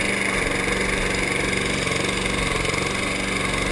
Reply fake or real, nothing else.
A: real